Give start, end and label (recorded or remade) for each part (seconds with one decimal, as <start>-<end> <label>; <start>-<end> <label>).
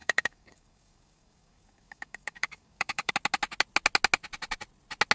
0.0-3.1 remade; 3.1-5.1 recorded